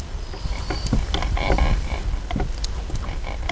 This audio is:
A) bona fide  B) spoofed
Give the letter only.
A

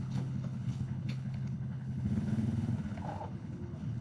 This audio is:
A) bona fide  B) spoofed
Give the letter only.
B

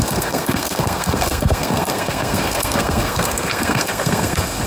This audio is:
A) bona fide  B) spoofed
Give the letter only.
B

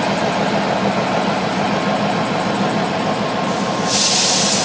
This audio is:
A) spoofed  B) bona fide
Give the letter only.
B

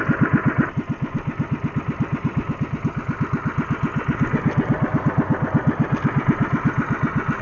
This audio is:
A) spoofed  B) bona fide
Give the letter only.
B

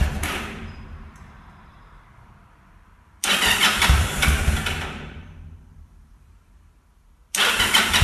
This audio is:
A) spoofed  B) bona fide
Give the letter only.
A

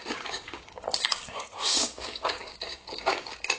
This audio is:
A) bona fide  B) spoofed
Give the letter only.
B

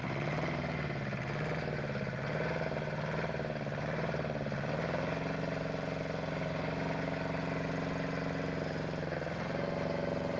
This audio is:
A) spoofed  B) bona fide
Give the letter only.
B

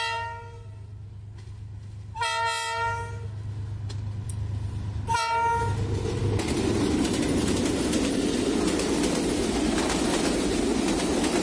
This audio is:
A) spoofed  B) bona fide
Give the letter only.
B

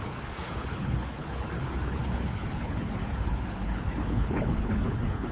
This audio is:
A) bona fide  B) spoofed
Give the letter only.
B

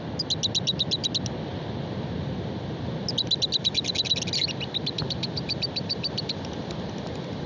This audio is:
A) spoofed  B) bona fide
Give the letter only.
B